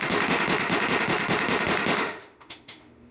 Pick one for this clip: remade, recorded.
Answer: remade